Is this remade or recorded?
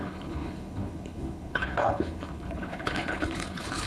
remade